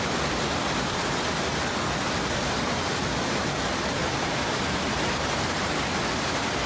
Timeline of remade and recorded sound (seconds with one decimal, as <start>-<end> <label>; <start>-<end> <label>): 0.0-4.0 recorded; 4.0-5.8 remade; 5.8-6.7 recorded